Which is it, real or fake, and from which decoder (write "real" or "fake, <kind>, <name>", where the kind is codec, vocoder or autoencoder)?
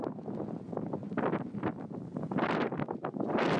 real